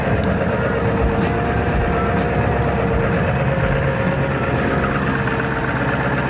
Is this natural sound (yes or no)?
yes